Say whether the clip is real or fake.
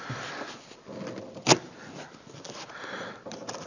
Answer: real